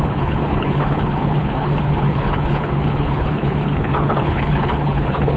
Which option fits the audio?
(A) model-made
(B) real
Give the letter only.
A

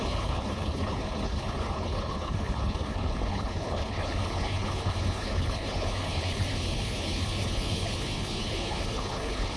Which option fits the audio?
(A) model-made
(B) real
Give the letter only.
A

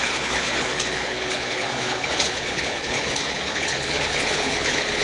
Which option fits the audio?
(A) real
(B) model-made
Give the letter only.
B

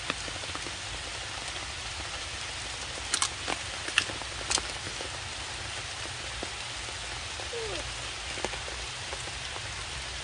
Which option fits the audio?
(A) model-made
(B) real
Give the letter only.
B